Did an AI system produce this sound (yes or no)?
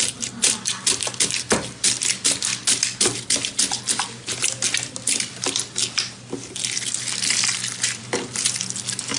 no